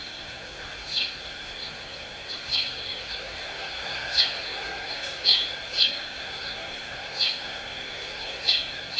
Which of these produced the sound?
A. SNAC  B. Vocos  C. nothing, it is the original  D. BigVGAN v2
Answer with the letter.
A